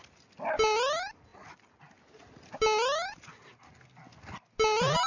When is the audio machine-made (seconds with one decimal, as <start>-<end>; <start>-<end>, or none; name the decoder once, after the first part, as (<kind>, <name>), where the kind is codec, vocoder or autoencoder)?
none